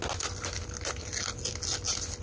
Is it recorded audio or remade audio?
recorded